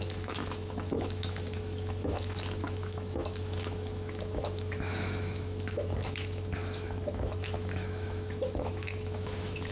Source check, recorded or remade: remade